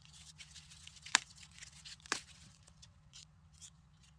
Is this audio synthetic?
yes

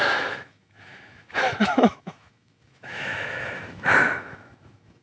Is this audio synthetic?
yes